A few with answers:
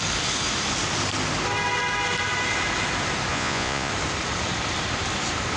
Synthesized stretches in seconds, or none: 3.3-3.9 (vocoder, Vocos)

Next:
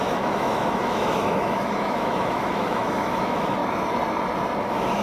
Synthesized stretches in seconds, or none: 0.0-3.6 (autoencoder, DAC-VAE); 4.6-5.0

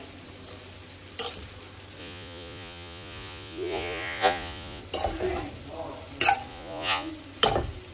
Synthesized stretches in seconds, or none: 2.0-4.8 (vocoder, Vocos); 6.5-7.1

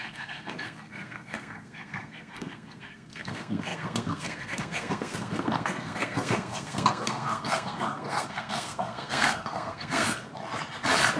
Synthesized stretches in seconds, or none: 0.0-10.3 (codec, SNAC)